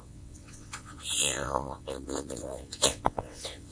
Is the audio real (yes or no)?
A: no